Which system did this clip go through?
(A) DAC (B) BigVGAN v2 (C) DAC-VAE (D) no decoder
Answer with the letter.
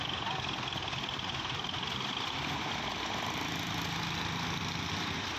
D